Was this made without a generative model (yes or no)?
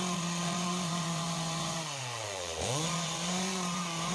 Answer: no